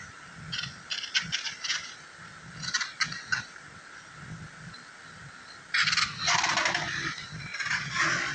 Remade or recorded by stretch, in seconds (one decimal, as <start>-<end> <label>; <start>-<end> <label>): 0.0-7.5 recorded; 7.5-8.3 remade